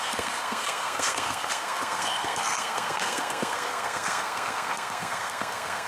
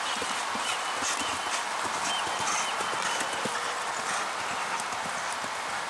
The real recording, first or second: second